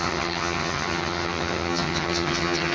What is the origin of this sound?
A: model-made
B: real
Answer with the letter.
A